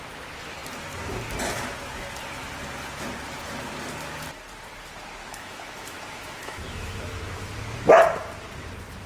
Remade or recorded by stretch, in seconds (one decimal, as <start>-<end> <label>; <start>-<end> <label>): 0.0-5.2 recorded; 5.2-7.6 remade; 7.6-9.1 recorded